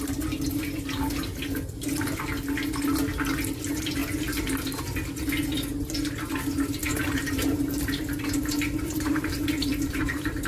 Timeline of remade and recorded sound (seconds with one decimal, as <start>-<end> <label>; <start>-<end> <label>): 0.0-6.8 recorded; 6.8-10.5 remade